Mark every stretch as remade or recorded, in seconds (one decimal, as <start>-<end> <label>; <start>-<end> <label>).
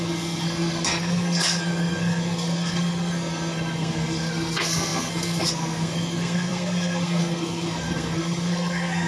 0.0-9.1 remade